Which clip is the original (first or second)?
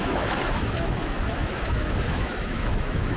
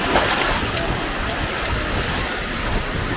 second